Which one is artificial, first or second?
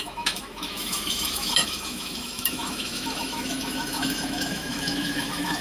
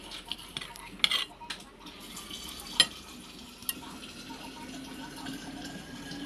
first